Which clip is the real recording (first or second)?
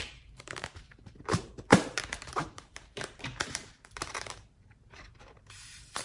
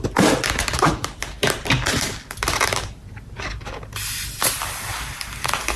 second